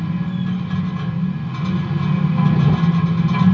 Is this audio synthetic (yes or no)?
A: no